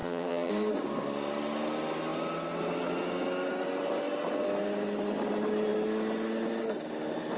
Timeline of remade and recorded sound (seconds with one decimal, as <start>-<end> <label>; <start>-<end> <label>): 0.0-0.5 remade; 0.5-7.4 recorded